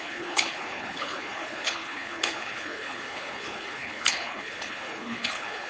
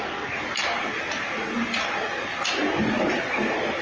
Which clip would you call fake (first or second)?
first